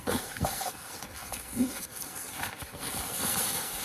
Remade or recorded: remade